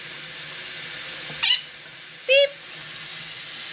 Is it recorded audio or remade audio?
recorded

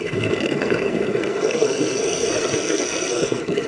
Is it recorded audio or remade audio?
remade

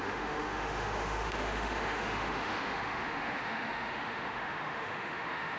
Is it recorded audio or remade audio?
remade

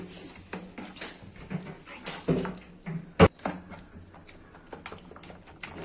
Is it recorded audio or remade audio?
recorded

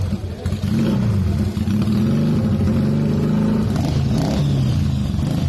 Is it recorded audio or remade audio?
recorded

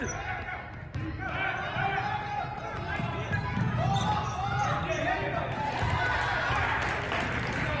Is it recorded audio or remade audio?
recorded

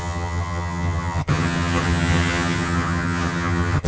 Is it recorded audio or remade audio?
remade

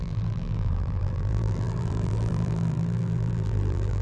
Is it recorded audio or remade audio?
remade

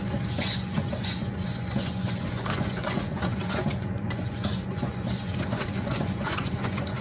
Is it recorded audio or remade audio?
remade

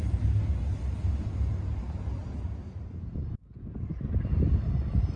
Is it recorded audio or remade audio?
recorded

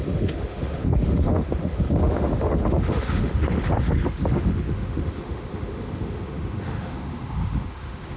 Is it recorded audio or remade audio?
remade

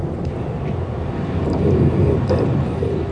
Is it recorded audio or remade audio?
recorded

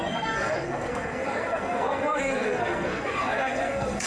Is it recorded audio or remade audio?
remade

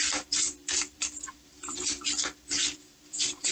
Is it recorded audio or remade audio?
remade